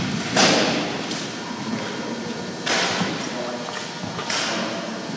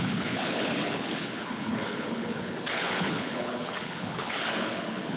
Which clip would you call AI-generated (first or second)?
second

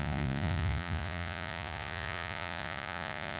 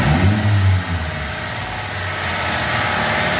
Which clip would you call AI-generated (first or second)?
first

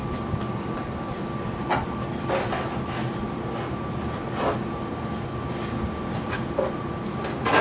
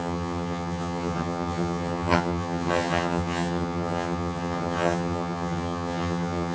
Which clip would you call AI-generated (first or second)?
second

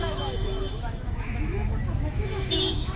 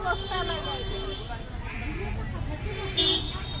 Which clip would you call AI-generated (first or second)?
first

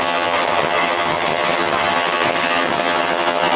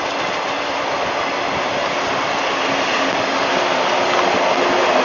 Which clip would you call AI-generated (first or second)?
first